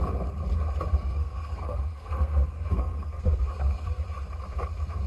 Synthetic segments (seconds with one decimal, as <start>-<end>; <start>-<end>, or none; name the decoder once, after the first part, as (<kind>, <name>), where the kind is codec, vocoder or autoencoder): 0.9-4.0 (codec, SNAC)